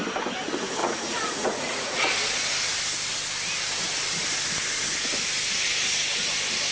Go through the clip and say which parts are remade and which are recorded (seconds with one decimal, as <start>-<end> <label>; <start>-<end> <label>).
0.0-0.8 recorded; 0.8-2.1 remade; 2.1-6.7 recorded